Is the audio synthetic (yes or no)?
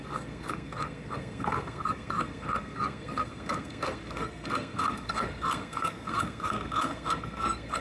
yes